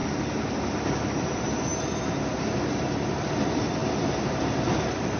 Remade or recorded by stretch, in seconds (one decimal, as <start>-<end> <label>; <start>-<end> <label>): 0.0-0.7 recorded; 0.7-1.7 remade; 1.7-2.3 recorded; 2.3-3.8 remade; 3.8-4.3 recorded; 4.3-5.2 remade